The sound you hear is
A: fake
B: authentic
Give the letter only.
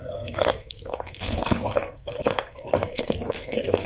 A